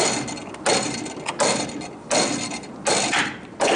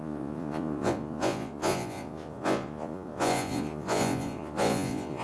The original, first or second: first